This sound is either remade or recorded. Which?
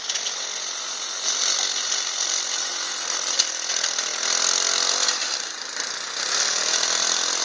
recorded